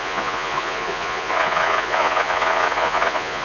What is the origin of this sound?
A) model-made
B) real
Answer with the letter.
A